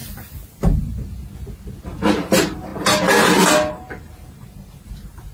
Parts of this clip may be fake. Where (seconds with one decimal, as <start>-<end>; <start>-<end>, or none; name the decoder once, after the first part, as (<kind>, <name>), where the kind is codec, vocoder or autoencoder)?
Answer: 2.1-2.7 (vocoder, BigVGAN v2); 3.7-5.3